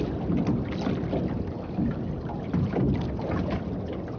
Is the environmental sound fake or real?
real